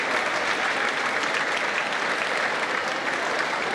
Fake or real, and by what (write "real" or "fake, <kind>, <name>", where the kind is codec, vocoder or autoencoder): real